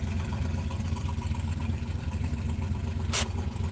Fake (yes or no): yes